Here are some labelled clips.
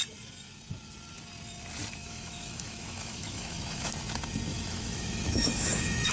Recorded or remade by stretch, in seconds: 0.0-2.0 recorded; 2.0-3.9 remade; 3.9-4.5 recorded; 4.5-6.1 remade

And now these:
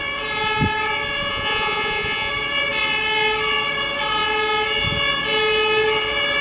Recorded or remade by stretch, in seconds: 0.0-1.3 recorded; 1.3-2.3 remade; 2.3-6.4 recorded

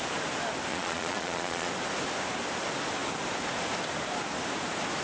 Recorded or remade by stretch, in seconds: 0.0-0.7 recorded; 0.7-1.7 remade; 1.7-5.0 recorded

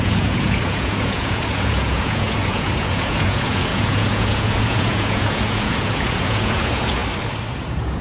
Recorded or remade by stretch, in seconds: 0.0-7.0 remade; 7.0-7.5 recorded; 7.5-8.0 remade

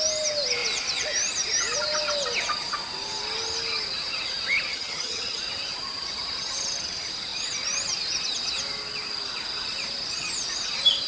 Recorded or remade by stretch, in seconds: 0.0-4.7 recorded; 4.7-5.4 remade; 5.4-11.1 recorded

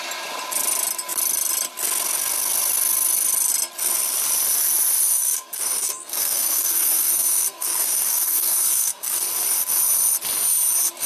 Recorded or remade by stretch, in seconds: 0.0-5.1 recorded; 5.1-9.2 remade; 9.2-11.1 recorded

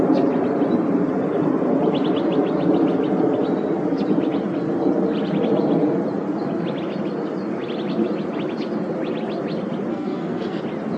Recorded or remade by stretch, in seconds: 0.0-9.9 recorded; 9.9-10.6 remade; 10.6-11.0 recorded

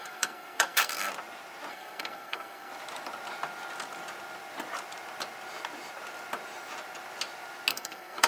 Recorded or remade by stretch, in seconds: 0.0-1.1 remade; 1.1-1.7 recorded; 1.7-2.7 remade; 2.7-7.7 recorded; 7.7-8.3 remade